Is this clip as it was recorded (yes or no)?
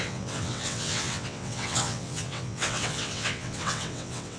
no